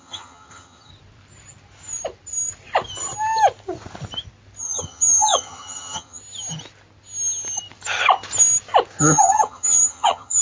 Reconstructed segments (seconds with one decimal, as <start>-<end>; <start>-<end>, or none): 0.0-0.9; 4.6-6.2; 9.0-10.4